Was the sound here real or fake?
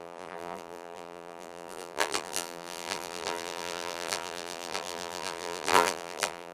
fake